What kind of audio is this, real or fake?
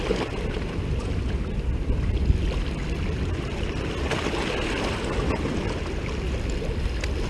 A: real